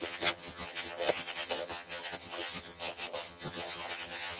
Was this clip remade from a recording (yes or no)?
yes